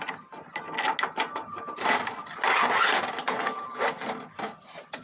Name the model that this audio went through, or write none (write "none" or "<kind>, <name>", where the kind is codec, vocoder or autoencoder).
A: none